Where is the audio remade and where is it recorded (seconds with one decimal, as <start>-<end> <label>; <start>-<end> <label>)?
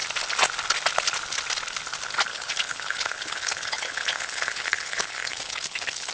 0.0-2.3 recorded; 2.3-6.1 remade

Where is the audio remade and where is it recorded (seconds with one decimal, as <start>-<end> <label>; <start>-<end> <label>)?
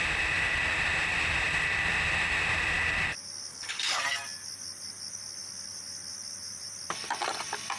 0.0-3.5 recorded; 3.5-4.0 remade; 4.0-7.8 recorded